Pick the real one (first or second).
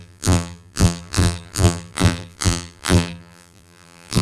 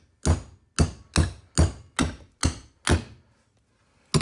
second